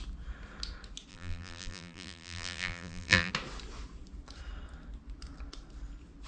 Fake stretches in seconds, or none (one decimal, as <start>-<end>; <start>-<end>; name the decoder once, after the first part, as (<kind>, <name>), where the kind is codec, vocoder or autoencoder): 1.1-3.3 (vocoder, BigVGAN v2)